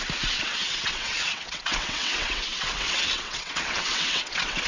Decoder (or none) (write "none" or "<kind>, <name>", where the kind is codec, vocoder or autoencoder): vocoder, WaveNeXt